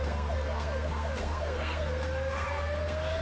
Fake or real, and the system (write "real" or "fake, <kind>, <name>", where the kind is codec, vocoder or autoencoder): fake, codec, SNAC